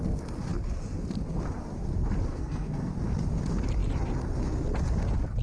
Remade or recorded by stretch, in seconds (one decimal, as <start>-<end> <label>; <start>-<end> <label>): 0.0-2.3 recorded; 2.3-2.9 remade; 2.9-5.4 recorded

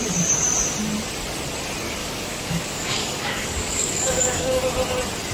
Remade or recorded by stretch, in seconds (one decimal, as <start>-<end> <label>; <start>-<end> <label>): 0.0-2.0 recorded; 2.0-4.6 remade; 4.6-5.3 recorded

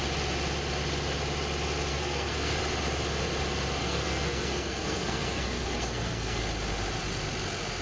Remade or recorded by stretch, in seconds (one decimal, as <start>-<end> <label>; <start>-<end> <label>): 0.0-1.9 recorded; 1.9-2.6 remade; 2.6-3.8 recorded; 3.8-6.4 remade; 6.4-7.8 recorded

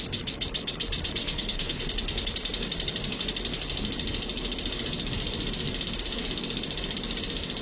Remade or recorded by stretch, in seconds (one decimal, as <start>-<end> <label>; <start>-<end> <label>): 0.0-1.2 recorded; 1.2-1.9 remade; 1.9-7.6 recorded